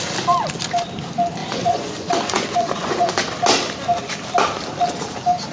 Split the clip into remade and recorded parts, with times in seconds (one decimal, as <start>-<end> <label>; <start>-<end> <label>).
0.0-1.4 recorded; 1.4-3.1 remade; 3.1-5.5 recorded